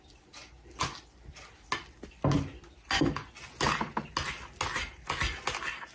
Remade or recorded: recorded